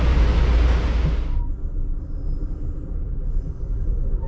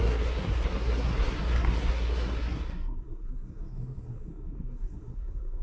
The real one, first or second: first